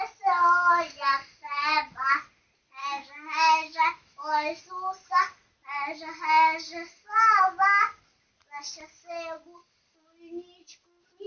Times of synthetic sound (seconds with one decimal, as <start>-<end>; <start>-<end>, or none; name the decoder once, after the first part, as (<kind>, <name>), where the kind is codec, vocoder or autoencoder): 2.8-4.6 (autoencoder, DAC-VAE)